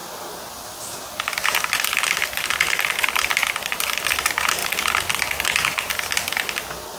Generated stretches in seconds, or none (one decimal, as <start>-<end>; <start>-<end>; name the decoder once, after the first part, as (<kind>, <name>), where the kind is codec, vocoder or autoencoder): none

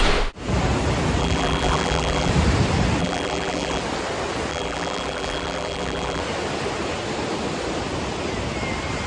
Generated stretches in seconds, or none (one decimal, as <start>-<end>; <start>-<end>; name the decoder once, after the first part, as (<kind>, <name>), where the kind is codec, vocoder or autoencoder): 1.2-2.3 (vocoder, BigVGAN v2); 3.0-3.8; 4.5-6.2

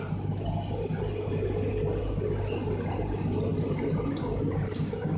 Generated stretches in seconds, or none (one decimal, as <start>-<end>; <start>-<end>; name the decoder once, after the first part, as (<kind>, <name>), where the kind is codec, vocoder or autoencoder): none

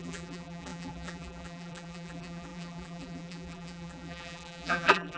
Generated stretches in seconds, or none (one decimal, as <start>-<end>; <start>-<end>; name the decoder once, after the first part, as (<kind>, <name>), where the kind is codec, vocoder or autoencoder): 0.0-5.2 (vocoder, BigVGAN v2)

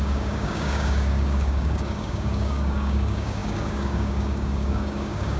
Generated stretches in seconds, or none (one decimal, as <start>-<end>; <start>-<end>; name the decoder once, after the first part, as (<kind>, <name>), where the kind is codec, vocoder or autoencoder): 0.0-5.4 (codec, DAC)